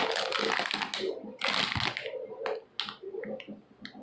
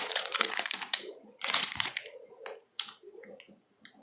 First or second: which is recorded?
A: first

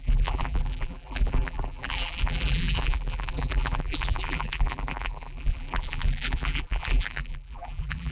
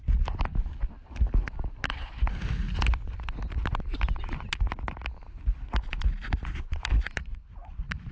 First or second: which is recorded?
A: second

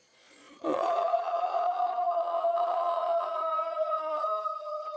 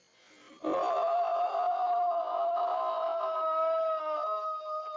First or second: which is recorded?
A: second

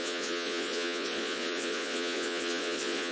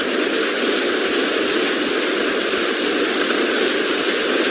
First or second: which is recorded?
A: second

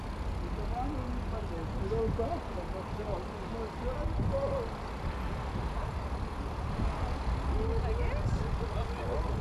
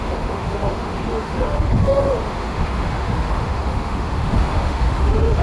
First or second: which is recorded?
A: first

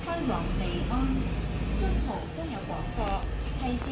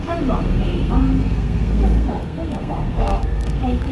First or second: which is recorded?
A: first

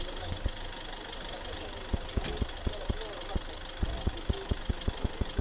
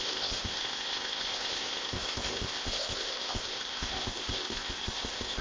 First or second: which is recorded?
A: first